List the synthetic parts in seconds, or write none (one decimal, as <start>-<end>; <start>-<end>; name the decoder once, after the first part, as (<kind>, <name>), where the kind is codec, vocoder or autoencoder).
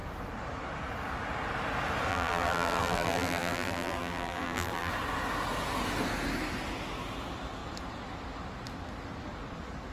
2.1-4.9 (vocoder, BigVGAN v2)